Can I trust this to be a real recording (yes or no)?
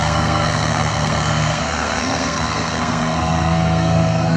no